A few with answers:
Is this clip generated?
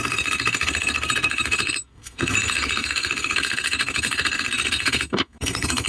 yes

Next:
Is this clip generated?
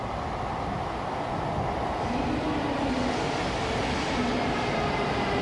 no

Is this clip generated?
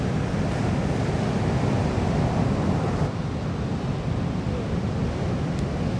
no